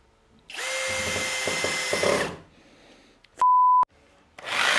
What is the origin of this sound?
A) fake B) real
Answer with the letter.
B